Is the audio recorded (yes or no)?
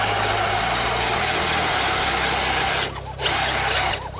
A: yes